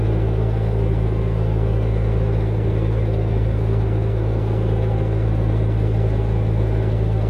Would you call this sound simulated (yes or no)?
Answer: yes